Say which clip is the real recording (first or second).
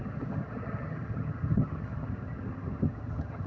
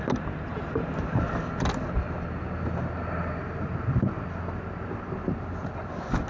second